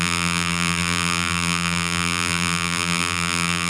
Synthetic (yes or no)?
yes